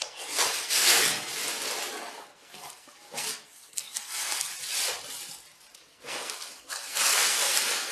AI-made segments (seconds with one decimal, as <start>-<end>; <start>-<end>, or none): 0.0-1.3; 2.1-4.5; 5.7-7.9